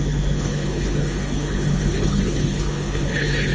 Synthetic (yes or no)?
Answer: yes